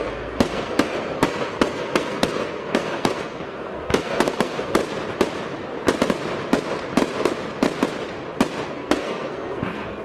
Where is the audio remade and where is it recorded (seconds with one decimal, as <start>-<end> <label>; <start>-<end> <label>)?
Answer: 0.0-4.8 remade; 4.8-8.7 recorded; 8.7-10.0 remade